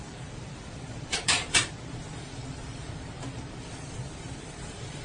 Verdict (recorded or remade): remade